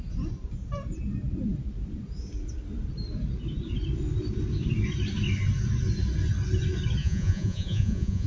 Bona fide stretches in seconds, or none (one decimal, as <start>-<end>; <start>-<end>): 0.0-7.0